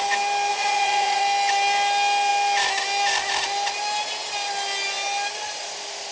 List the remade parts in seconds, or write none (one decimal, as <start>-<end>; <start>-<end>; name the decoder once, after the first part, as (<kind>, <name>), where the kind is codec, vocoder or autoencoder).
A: 0.5-1.2 (vocoder, Vocos)